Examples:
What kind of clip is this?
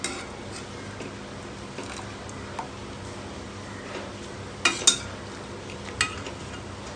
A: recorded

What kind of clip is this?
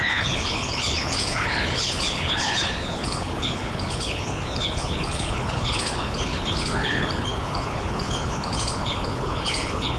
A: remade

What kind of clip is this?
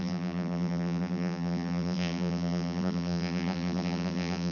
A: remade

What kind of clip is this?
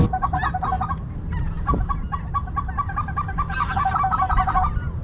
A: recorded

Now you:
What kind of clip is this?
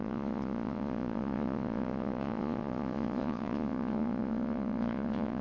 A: remade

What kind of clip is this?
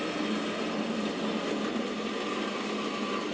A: recorded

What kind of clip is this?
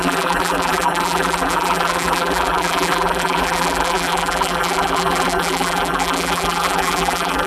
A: remade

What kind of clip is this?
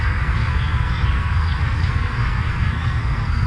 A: remade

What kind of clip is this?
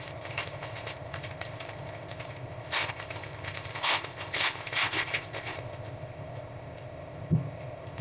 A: remade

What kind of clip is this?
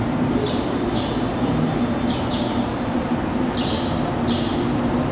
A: remade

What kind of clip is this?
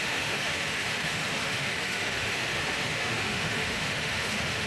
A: remade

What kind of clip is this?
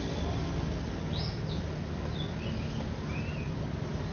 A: recorded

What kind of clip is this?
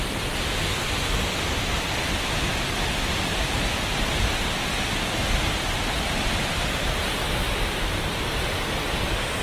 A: recorded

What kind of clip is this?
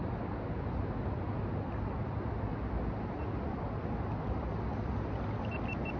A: recorded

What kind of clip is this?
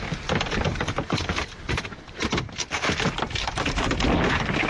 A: recorded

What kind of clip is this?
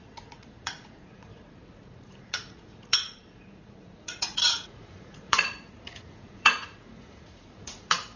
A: remade